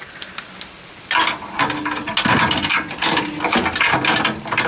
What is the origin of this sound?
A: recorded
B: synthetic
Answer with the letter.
A